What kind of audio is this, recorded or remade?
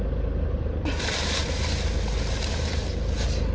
recorded